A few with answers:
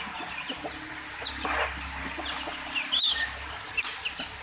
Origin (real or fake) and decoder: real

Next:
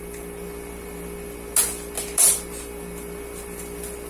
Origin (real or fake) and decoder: real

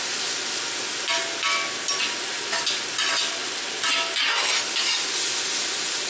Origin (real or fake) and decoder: real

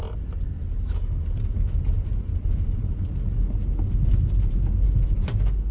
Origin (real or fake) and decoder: real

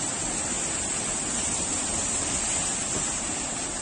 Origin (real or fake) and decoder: real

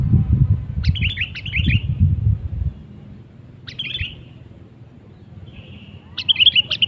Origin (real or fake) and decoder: real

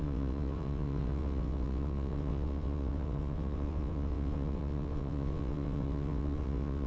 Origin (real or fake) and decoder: fake, vocoder, WaveNeXt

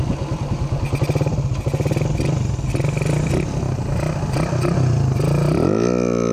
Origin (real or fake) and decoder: real